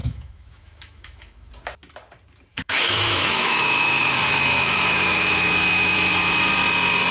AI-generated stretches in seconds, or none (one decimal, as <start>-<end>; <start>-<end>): 0.0-1.5; 2.5-6.5